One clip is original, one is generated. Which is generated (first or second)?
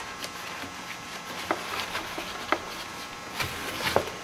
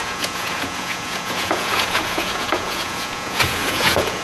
second